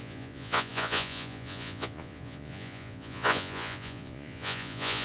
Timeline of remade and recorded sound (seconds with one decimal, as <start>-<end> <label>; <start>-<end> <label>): 0.0-5.0 remade